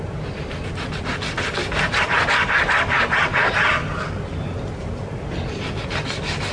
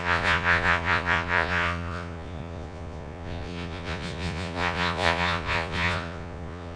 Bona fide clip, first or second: first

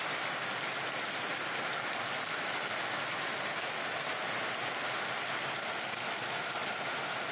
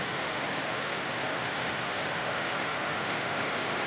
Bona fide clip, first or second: first